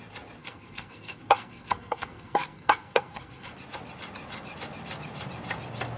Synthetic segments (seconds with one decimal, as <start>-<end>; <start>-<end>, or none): 0.4-3.5